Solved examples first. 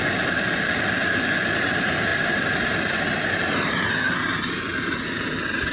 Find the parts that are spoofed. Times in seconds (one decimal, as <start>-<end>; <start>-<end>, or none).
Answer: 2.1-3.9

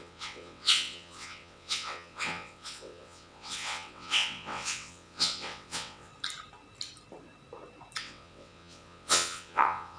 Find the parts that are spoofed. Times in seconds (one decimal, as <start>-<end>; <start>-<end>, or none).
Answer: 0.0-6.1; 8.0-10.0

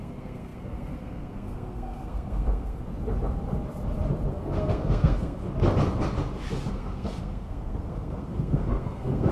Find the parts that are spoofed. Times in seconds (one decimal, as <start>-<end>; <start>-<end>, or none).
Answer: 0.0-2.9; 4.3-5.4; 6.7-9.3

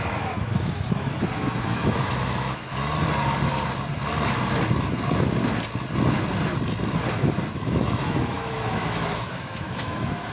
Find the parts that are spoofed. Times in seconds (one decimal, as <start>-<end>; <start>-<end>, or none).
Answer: 0.0-3.0; 7.1-10.3